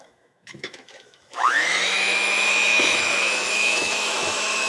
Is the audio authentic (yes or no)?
no